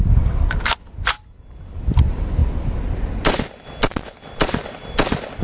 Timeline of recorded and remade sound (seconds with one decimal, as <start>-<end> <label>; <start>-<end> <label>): 0.0-5.4 recorded